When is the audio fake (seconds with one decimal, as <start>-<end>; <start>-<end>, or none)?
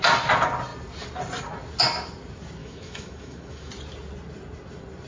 2.6-3.7